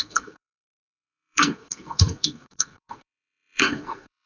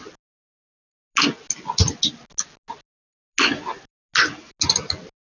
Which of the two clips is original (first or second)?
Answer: second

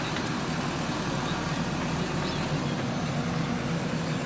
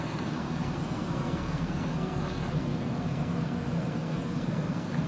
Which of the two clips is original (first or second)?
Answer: first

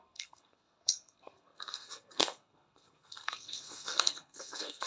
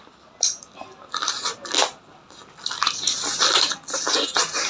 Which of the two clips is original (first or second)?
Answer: second